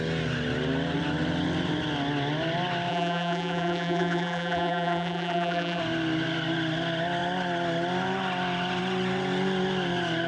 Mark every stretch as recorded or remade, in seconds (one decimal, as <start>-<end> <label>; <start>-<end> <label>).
0.0-2.9 recorded; 2.9-5.8 remade; 5.8-10.3 recorded